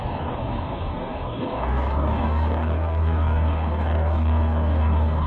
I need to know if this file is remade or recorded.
remade